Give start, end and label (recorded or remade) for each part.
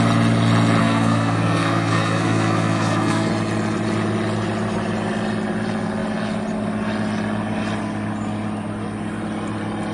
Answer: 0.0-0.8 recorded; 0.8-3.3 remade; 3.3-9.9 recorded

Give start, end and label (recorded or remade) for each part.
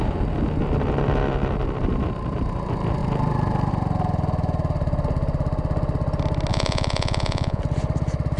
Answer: 0.0-6.5 recorded; 6.5-7.6 remade; 7.6-8.4 recorded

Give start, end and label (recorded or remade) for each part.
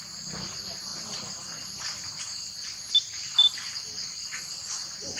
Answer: 0.0-5.2 recorded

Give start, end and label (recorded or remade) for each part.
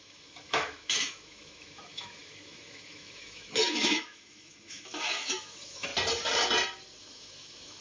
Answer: 0.0-5.9 remade; 5.9-7.0 recorded; 7.0-7.8 remade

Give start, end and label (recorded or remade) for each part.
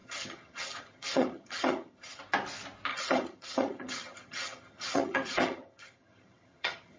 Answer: 0.0-2.2 remade; 2.2-2.9 recorded; 2.9-7.0 remade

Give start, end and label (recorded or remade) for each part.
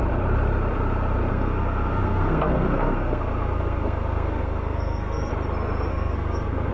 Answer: 0.0-1.3 recorded; 1.3-5.3 remade; 5.3-5.9 recorded; 5.9-6.7 remade